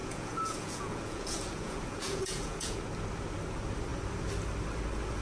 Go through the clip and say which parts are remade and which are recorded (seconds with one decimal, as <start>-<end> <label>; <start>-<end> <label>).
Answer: 0.0-2.8 remade; 2.8-5.2 recorded